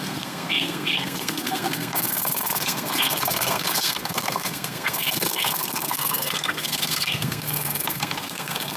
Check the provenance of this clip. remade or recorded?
remade